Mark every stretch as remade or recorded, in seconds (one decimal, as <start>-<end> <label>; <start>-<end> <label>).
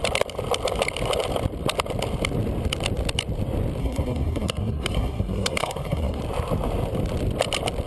0.0-3.8 recorded; 3.8-6.2 remade; 6.2-7.9 recorded